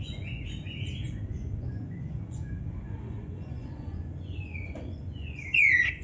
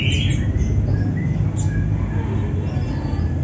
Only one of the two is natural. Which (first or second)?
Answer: second